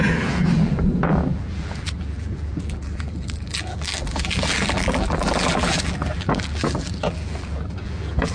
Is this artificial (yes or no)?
yes